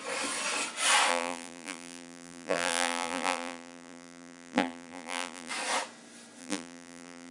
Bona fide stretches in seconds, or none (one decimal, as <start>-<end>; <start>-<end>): 0.0-1.1; 5.5-6.4